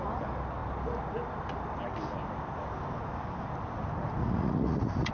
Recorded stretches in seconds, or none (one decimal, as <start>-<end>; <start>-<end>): 0.0-4.2